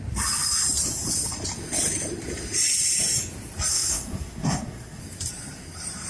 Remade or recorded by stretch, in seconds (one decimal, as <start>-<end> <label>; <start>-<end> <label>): 0.0-3.7 recorded; 3.7-5.0 remade; 5.0-6.1 recorded